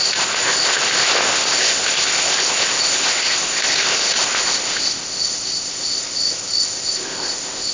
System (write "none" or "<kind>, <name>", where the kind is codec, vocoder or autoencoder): codec, ZipCodec